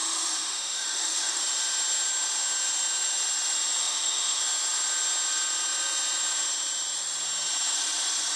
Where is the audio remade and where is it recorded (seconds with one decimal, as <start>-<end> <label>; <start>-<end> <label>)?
0.0-1.4 remade; 1.4-3.8 recorded; 3.8-4.4 remade; 4.4-8.4 recorded